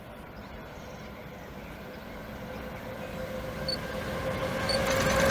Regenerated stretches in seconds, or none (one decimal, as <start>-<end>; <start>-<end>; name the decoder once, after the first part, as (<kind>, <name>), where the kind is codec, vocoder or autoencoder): 0.0-1.2 (vocoder, BigVGAN v2); 4.4-5.3